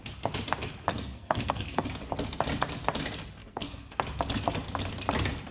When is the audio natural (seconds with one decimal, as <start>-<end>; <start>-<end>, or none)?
0.0-0.9; 1.9-3.4; 3.9-5.5